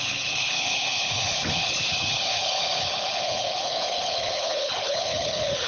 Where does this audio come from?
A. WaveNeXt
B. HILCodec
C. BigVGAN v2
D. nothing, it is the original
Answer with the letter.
B